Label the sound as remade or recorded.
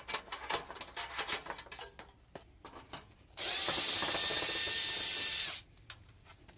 recorded